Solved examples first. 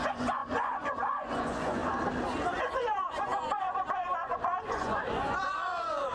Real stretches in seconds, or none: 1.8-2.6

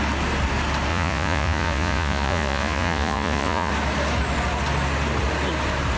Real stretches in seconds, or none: 0.0-0.9; 3.7-6.0

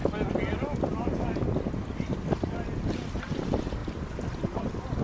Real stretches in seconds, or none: 0.0-5.0

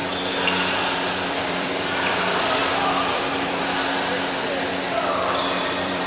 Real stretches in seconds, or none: 0.0-1.3; 2.6-5.6

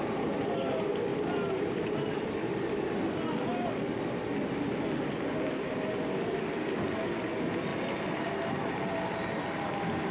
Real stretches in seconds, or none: 0.0-10.1

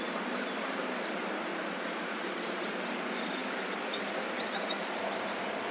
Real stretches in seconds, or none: 0.0-1.5; 2.3-5.7

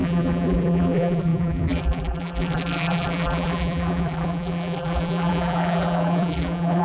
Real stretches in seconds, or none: none

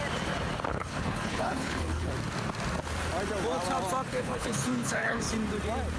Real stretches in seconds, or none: 0.0-0.7; 2.1-4.1; 5.2-6.0